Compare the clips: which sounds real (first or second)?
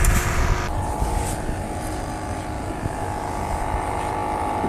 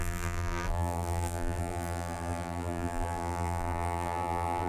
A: first